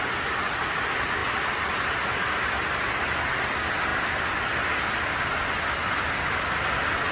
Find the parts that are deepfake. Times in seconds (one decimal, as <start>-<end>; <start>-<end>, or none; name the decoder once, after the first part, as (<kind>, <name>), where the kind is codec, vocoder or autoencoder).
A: none